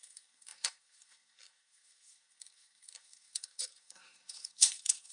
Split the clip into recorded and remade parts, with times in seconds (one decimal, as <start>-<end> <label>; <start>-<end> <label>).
0.0-5.1 remade